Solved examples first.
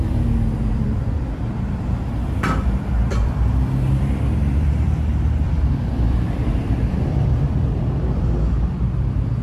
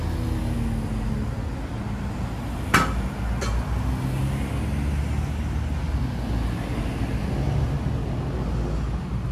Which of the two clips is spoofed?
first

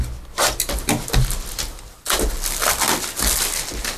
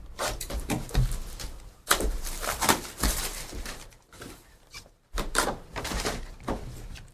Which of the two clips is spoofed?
second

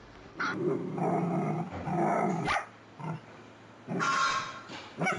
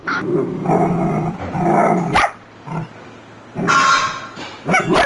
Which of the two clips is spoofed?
first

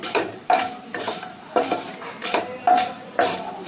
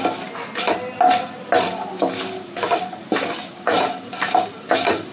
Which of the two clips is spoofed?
first